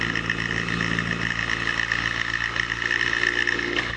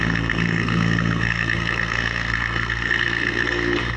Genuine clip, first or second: first